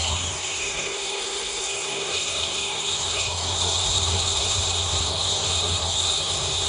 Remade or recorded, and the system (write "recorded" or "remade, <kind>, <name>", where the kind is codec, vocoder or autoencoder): remade, codec, SNAC